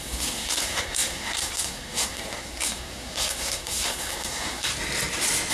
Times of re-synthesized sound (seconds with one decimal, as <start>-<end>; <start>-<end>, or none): 0.0-4.7